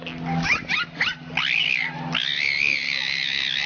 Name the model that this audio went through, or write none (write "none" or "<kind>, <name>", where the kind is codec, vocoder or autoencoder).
none